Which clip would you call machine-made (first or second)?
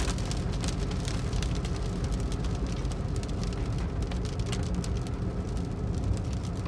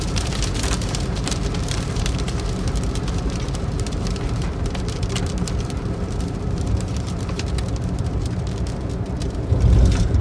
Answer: second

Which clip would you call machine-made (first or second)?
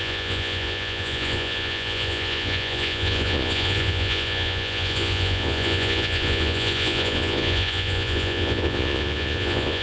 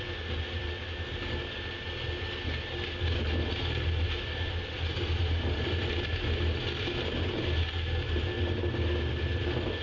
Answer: first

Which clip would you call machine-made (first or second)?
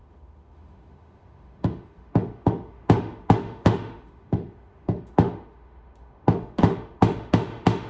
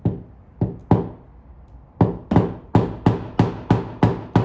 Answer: first